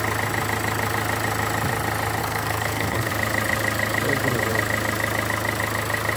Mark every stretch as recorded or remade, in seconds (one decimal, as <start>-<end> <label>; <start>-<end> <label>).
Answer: 0.0-2.2 recorded; 2.2-3.1 remade; 3.1-6.2 recorded